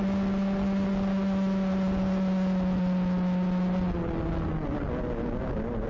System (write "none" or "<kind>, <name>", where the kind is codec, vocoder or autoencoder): none